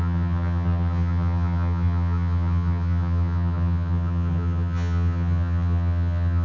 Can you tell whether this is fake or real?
fake